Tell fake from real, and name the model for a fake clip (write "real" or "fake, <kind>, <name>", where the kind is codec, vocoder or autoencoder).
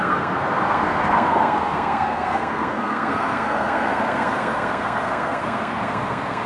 fake, codec, SNAC